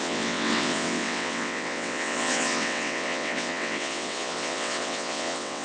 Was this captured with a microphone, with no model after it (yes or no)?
no